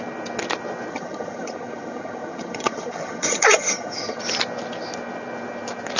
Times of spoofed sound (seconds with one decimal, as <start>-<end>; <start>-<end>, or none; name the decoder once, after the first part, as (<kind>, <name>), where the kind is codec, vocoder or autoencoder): 0.9-4.2 (vocoder, HiFi-GAN)